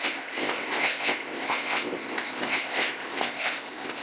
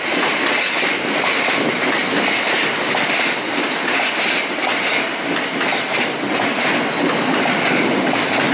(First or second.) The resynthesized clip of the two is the first